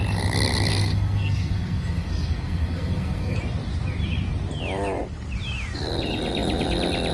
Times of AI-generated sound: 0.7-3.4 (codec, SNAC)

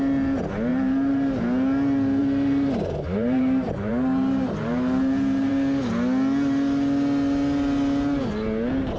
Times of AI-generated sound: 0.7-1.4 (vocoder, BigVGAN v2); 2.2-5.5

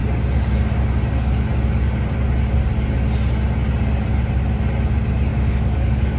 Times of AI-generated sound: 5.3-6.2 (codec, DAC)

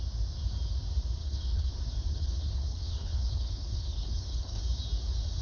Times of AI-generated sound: 1.2-1.7 (codec, HILCodec); 2.1-4.6

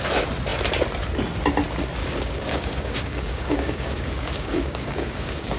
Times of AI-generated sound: 2.0-5.6 (codec, DAC)

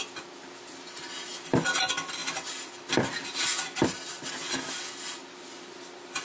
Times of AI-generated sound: none

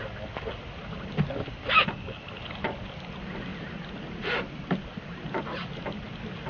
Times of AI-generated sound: none

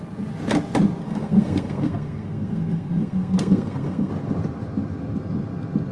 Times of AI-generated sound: 1.0-4.1 (codec, SNAC)